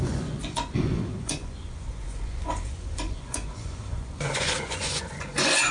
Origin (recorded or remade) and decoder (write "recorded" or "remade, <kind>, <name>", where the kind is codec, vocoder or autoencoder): remade, vocoder, Vocos